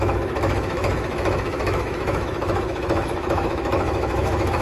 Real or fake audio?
fake